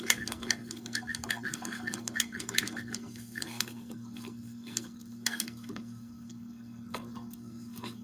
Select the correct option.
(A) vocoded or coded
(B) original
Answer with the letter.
A